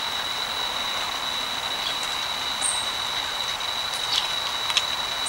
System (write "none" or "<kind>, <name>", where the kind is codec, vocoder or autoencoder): none